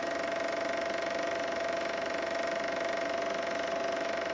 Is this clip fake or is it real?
real